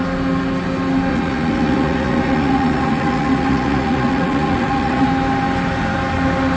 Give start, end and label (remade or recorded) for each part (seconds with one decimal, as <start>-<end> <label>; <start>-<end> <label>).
0.0-1.1 recorded; 1.1-5.1 remade; 5.1-6.6 recorded